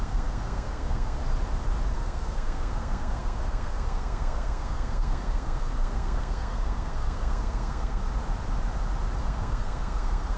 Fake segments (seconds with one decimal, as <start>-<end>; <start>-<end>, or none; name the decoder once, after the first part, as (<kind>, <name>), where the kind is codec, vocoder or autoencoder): 0.0-1.2 (codec, SNAC); 1.9-8.0; 9.2-10.4